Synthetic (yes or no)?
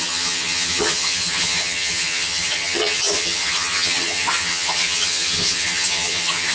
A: yes